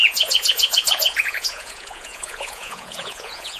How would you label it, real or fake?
fake